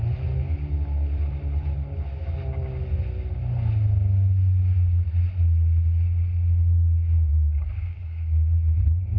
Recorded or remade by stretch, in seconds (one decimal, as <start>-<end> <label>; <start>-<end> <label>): 0.0-7.3 recorded; 7.3-8.5 remade; 8.5-9.2 recorded